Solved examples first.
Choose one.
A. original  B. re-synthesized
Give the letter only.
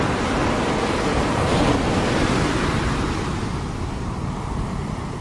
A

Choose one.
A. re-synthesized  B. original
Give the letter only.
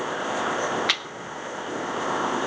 A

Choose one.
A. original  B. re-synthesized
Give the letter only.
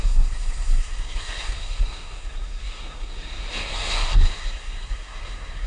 B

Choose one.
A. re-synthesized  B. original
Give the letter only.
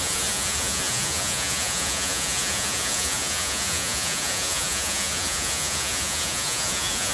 A